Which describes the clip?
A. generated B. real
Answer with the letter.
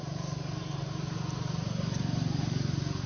B